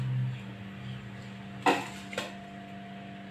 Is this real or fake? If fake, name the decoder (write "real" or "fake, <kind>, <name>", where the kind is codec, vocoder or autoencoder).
real